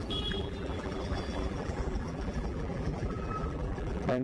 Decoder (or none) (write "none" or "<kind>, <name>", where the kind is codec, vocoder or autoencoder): vocoder, BigVGAN v2